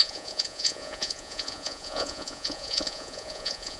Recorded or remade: remade